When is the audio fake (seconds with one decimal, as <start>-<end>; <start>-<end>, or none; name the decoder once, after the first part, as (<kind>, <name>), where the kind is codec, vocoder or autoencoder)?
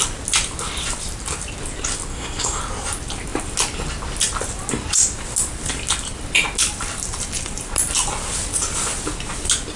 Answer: 2.1-2.6 (codec, SNAC)